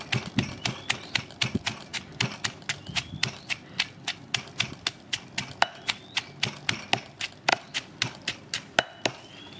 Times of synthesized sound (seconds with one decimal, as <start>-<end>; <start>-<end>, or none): none